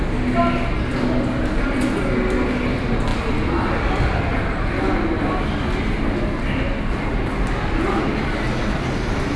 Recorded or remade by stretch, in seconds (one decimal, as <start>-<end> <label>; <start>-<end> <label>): 0.0-9.4 recorded